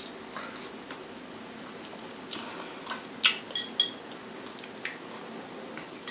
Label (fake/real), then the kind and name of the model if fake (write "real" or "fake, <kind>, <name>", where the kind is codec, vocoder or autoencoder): real